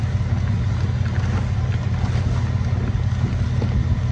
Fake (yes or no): no